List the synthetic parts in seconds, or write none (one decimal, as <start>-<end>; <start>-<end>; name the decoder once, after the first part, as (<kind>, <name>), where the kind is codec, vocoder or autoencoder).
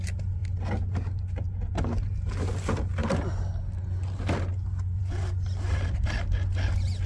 none